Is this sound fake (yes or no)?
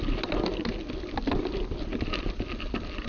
no